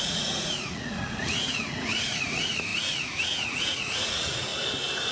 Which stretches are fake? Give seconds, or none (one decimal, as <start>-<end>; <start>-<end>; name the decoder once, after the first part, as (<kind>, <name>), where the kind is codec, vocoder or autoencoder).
0.0-4.5 (vocoder, Vocos)